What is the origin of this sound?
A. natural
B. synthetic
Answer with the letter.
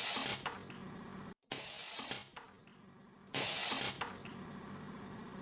A